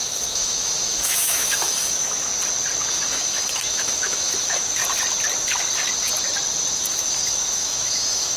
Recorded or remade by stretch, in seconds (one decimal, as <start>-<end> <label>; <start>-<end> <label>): 0.0-2.3 remade; 2.3-2.9 recorded; 2.9-4.8 remade; 4.8-6.8 recorded; 6.8-8.4 remade